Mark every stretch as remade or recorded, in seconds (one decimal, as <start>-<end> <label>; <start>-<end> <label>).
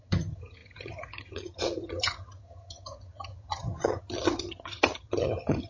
0.0-5.7 remade